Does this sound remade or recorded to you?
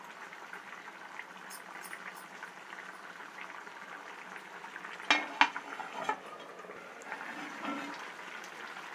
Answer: recorded